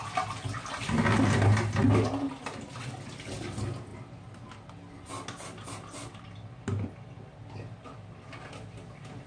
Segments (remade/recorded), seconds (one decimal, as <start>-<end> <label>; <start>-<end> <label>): 0.0-9.3 recorded